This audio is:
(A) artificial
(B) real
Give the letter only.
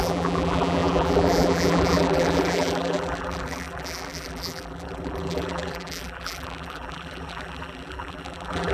A